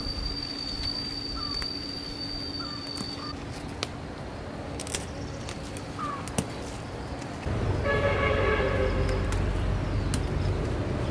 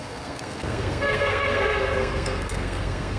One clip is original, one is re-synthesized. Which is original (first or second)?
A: first